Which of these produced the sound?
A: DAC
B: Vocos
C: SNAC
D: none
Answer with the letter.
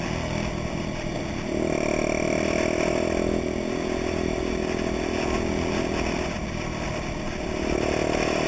D